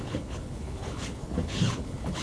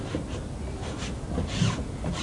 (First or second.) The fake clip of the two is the first